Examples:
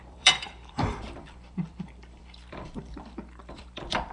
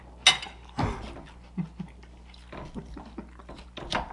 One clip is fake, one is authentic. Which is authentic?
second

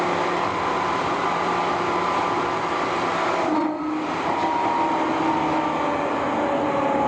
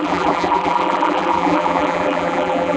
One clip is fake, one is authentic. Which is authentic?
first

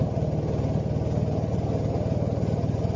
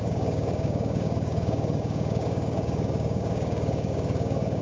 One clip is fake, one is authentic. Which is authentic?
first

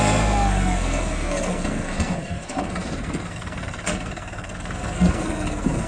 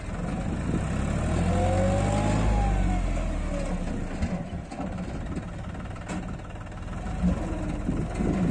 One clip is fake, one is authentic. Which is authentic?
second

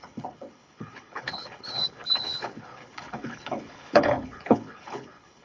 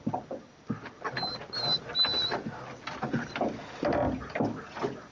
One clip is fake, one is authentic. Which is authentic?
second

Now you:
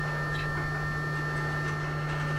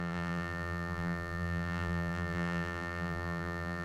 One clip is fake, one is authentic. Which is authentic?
first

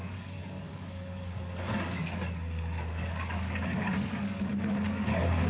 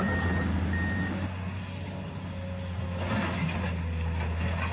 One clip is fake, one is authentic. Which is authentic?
second